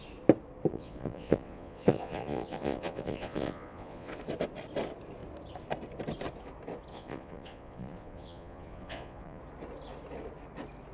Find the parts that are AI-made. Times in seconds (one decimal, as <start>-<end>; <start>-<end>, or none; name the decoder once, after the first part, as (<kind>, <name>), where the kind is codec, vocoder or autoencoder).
0.7-4.2 (vocoder, Vocos); 6.9-9.4